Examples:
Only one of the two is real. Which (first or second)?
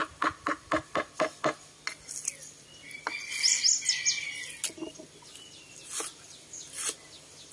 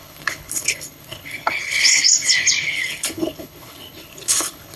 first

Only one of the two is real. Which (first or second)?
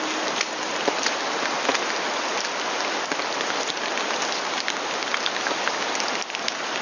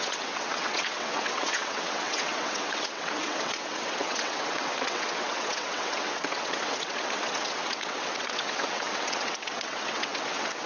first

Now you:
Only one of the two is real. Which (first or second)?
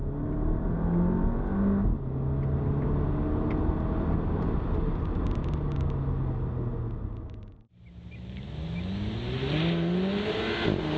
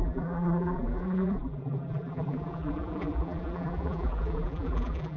first